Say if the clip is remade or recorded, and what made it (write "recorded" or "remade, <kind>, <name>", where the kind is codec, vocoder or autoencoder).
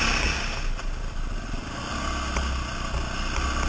recorded